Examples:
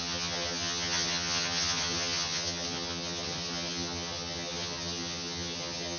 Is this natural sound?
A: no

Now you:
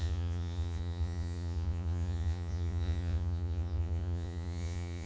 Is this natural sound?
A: no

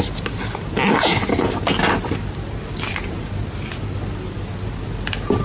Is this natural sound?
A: yes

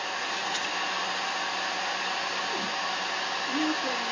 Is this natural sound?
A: yes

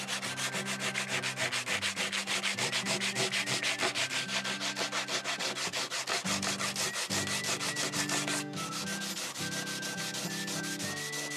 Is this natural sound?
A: yes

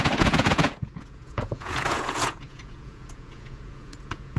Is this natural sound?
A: no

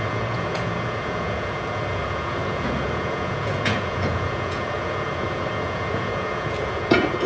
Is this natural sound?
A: no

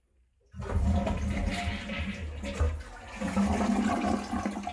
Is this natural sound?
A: yes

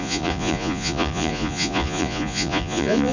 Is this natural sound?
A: no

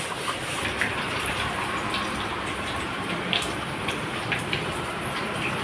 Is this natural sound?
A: no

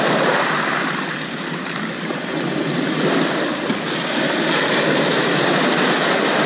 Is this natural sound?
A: yes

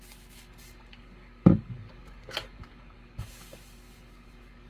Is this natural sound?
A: no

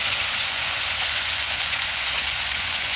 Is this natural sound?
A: no